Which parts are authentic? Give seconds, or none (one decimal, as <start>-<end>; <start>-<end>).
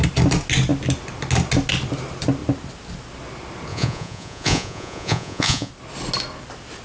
0.0-3.7; 5.7-6.8